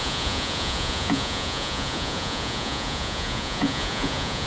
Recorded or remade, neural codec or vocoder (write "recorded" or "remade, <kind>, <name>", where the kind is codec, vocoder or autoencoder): remade, vocoder, Vocos